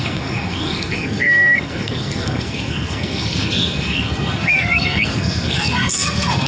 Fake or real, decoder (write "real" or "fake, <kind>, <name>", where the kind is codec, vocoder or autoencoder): fake, codec, SNAC